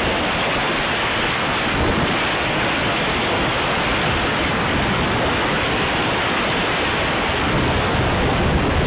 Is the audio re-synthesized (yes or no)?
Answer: no